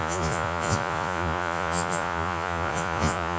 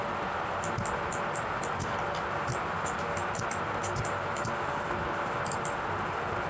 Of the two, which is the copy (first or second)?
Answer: first